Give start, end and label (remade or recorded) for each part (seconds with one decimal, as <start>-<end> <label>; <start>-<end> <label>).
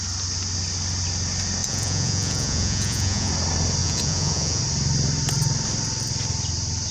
0.0-1.6 recorded; 1.6-3.3 remade; 3.3-3.8 recorded; 3.8-4.6 remade; 4.6-6.9 recorded